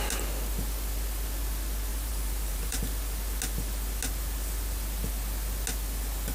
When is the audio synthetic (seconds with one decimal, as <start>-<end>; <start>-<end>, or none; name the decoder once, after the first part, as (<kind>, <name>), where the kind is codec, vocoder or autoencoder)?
1.9-2.8 (vocoder, BigVGAN v2)